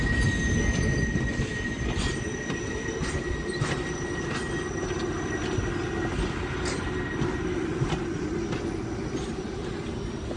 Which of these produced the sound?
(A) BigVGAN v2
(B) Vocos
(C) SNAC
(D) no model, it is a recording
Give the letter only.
D